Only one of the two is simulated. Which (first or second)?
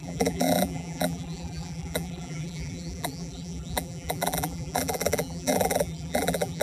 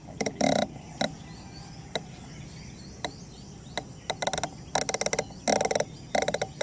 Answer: first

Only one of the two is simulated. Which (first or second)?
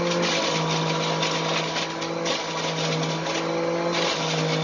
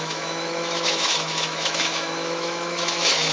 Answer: second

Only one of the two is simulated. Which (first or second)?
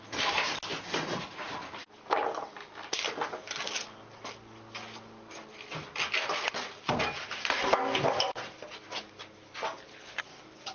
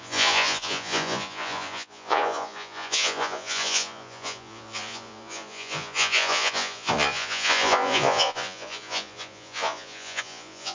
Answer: second